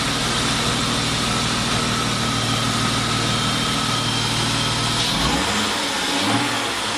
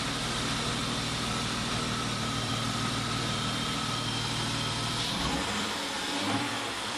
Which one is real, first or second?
first